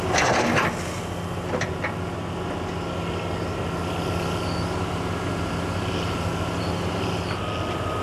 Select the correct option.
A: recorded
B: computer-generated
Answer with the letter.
A